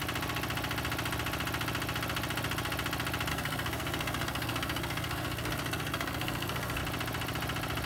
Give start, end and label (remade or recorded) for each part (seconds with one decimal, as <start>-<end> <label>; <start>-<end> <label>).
0.0-3.3 recorded; 3.3-6.8 remade; 6.8-7.9 recorded